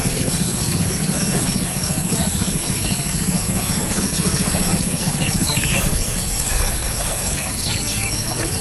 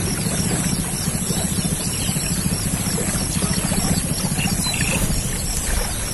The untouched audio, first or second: second